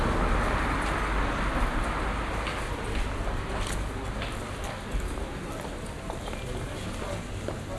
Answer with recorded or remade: recorded